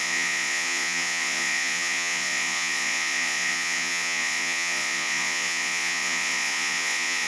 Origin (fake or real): fake